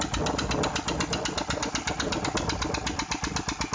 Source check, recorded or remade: recorded